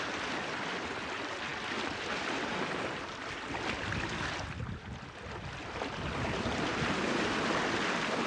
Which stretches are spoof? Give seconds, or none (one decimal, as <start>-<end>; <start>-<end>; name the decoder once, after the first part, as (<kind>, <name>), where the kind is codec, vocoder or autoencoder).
none